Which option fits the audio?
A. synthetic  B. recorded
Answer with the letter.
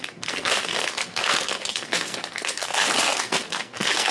A